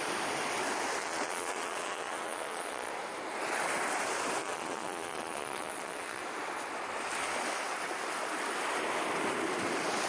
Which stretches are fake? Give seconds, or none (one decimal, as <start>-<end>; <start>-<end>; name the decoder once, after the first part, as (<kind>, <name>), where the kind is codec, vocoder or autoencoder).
1.0-2.9 (vocoder, Vocos); 4.4-6.2